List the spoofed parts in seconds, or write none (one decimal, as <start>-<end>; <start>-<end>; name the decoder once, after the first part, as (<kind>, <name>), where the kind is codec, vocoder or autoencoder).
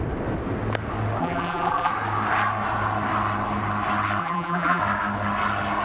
1.2-1.9 (vocoder, BigVGAN v2); 4.2-4.8